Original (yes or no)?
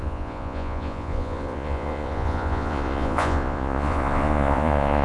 no